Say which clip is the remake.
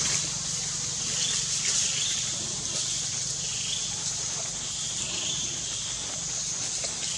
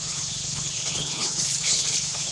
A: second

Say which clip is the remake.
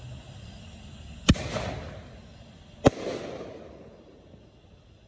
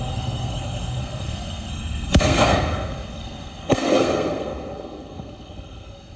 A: second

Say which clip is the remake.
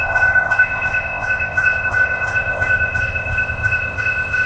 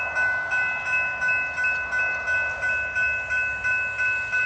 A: first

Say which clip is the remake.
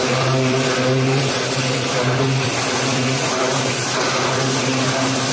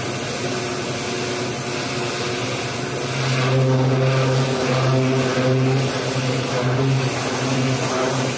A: first